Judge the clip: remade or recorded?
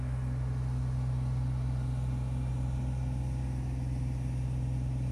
recorded